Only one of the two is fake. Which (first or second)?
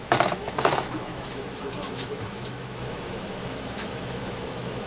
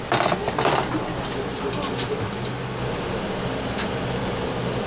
first